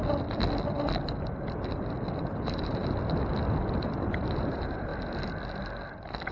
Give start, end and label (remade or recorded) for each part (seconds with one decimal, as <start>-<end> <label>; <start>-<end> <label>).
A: 0.0-2.3 recorded; 2.3-2.8 remade; 2.8-4.0 recorded; 4.0-4.9 remade; 4.9-6.3 recorded